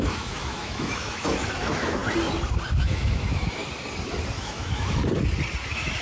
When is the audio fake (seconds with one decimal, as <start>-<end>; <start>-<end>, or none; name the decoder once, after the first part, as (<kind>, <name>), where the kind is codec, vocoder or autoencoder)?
0.0-2.0 (autoencoder, DAC-VAE); 2.8-3.6; 4.4-5.0; 5.6-6.0